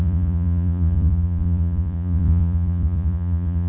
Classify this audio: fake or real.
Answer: fake